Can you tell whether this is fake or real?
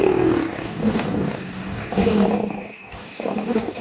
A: fake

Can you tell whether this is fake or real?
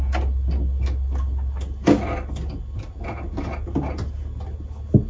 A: real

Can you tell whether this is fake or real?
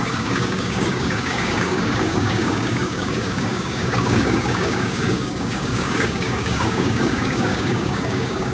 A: fake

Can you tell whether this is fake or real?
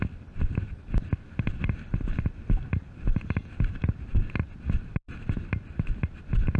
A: real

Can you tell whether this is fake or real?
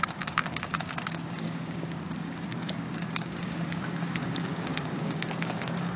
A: fake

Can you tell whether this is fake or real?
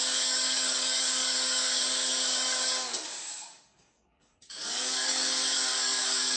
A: fake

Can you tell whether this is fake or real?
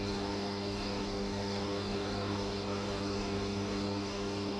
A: fake